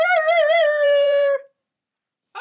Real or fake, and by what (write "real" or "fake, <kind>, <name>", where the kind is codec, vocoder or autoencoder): fake, vocoder, BigVGAN v2